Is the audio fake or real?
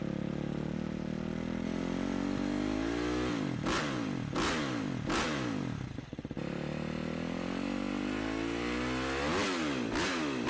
real